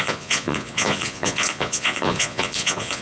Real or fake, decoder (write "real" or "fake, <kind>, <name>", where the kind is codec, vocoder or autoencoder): fake, vocoder, Vocos